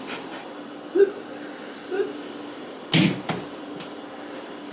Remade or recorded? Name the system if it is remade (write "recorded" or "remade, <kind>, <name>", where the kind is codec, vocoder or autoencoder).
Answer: recorded